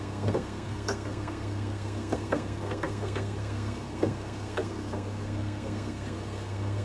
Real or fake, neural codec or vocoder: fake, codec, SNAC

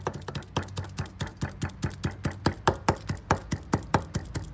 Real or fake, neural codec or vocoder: real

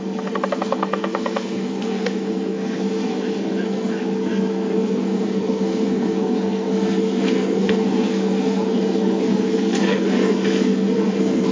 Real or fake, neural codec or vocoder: fake, codec, SNAC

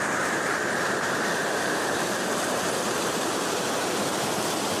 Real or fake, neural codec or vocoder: fake, vocoder, BigVGAN v2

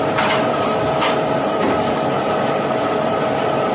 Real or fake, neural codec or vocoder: fake, vocoder, BigVGAN v2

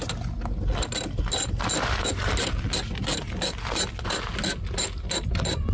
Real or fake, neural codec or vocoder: real